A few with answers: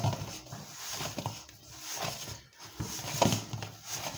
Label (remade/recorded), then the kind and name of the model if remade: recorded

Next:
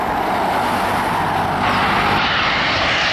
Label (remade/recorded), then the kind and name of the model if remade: recorded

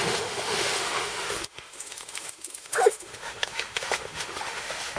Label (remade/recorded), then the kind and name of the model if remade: remade, autoencoder, DAC-VAE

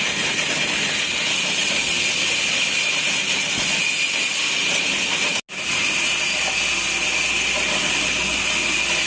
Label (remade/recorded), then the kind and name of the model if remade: recorded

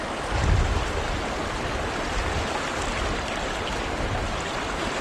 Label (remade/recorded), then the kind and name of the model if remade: recorded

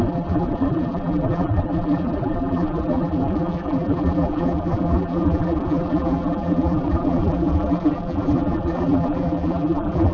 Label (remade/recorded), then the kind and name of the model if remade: remade, vocoder, BigVGAN v2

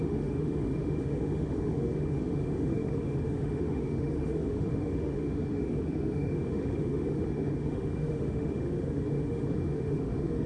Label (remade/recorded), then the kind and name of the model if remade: remade, autoencoder, DAC-VAE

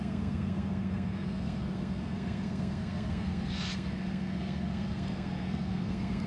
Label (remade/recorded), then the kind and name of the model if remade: remade, codec, SNAC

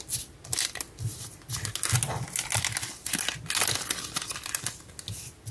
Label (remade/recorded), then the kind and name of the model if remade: recorded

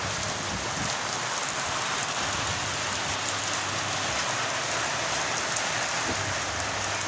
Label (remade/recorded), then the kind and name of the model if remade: recorded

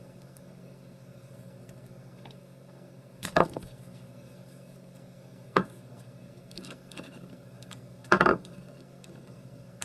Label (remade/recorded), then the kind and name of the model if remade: remade, codec, SNAC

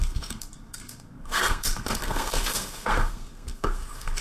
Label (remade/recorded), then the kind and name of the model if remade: remade, codec, SNAC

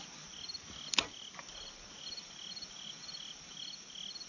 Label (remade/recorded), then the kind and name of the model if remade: recorded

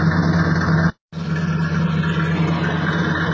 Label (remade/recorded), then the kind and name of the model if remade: recorded